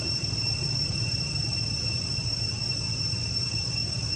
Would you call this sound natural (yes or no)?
no